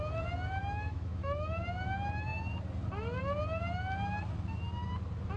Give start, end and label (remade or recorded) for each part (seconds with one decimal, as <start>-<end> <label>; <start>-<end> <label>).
0.0-0.6 recorded; 0.6-1.5 remade; 1.5-5.4 recorded